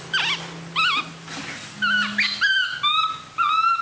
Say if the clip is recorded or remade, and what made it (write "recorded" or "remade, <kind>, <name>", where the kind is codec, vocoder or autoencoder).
recorded